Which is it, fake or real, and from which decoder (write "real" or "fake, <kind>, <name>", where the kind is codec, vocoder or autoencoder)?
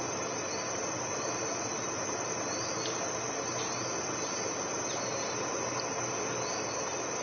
real